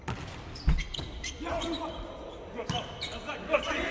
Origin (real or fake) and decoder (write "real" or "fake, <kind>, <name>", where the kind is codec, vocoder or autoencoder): real